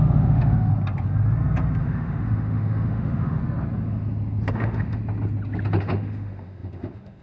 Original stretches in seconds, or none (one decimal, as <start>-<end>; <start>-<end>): 0.7-1.8; 3.4-4.5; 5.0-5.8